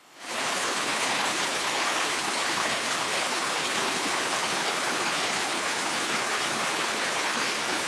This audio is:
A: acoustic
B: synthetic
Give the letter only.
B